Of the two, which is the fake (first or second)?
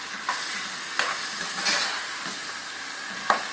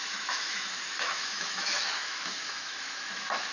second